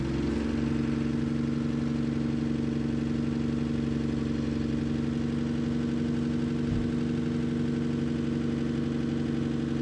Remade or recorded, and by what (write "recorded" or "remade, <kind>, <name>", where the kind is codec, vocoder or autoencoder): recorded